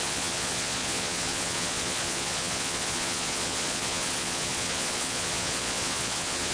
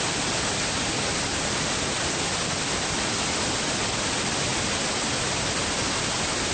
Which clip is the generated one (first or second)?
first